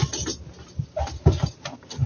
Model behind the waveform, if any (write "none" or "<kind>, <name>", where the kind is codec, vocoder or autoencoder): none